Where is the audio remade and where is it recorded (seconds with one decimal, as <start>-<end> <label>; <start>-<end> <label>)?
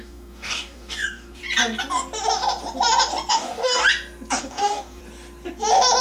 0.0-1.4 remade; 1.4-3.3 recorded; 3.3-3.8 remade; 3.8-4.4 recorded; 4.4-5.0 remade; 5.0-6.0 recorded